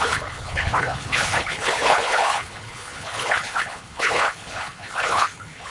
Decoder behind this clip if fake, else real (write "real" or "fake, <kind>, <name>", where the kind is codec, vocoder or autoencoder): fake, codec, HILCodec